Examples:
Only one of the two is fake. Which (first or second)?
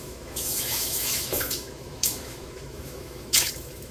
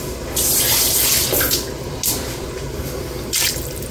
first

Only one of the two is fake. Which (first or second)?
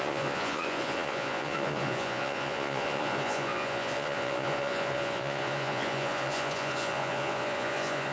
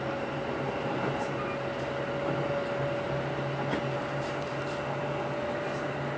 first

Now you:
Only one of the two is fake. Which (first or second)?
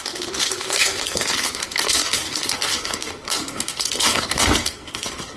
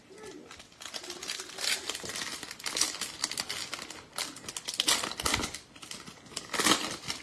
first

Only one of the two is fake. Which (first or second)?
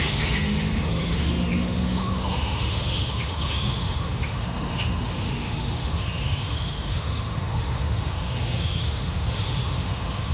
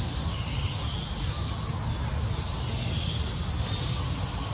first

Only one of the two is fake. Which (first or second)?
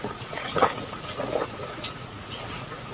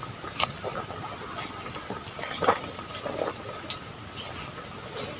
first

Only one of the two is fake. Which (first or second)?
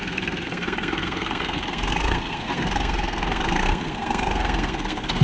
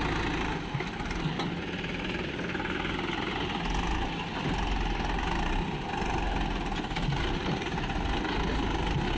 first